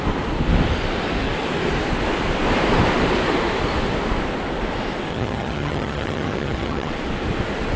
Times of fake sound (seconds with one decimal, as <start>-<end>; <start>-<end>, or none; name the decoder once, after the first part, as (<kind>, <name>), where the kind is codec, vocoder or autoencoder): 5.1-6.9 (vocoder, HiFi-GAN)